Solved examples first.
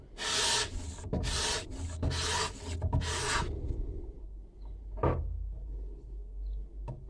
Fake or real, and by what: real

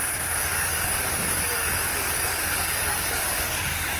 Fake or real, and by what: fake, codec, DAC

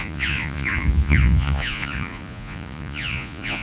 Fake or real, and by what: fake, vocoder, Vocos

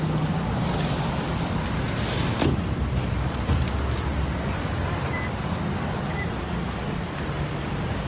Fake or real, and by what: real